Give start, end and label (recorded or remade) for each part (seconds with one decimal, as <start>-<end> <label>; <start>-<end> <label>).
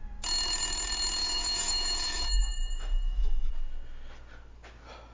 0.0-1.2 recorded; 1.2-3.5 remade; 3.5-5.1 recorded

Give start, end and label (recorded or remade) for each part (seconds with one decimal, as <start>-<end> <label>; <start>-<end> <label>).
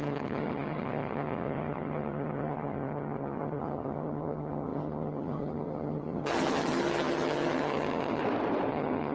0.0-8.2 remade; 8.2-8.7 recorded; 8.7-9.1 remade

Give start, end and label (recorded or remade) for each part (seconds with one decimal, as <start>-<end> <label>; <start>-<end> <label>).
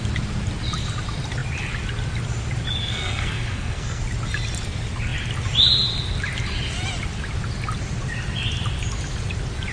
0.0-2.8 recorded; 2.8-4.0 remade; 4.0-9.7 recorded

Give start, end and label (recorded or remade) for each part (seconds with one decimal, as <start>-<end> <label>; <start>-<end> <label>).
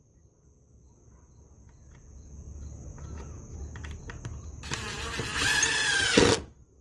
0.0-6.8 recorded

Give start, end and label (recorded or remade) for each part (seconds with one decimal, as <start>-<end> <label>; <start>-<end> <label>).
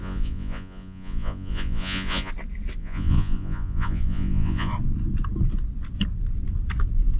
0.0-2.3 remade; 2.3-2.8 recorded; 2.8-4.7 remade; 4.7-7.2 recorded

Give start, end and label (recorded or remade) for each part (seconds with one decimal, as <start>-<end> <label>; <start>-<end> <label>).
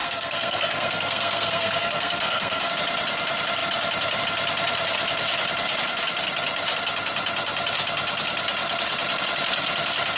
0.0-2.7 remade; 2.7-10.2 recorded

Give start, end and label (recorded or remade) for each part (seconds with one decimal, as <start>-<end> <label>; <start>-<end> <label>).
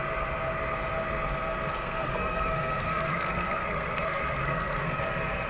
0.0-1.7 recorded; 1.7-5.0 remade; 5.0-5.5 recorded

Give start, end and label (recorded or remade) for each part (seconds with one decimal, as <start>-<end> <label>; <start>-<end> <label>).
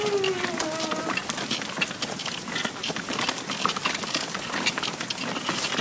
0.0-5.8 recorded